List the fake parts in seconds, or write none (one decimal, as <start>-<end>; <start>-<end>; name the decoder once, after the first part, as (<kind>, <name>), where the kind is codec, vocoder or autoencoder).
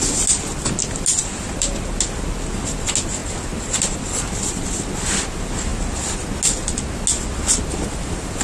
1.2-2.0 (vocoder, BigVGAN v2); 3.2-5.2